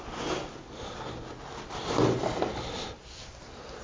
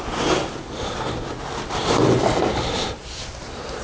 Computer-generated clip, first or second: second